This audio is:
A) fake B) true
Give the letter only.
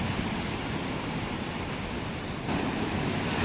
B